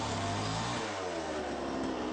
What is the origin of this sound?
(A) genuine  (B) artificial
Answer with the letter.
A